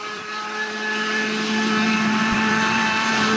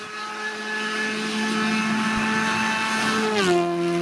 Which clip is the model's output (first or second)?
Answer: first